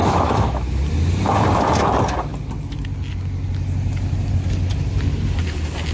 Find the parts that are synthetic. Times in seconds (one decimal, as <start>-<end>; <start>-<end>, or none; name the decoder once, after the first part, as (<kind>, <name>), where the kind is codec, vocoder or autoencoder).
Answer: 0.0-0.8 (autoencoder, DAC-VAE)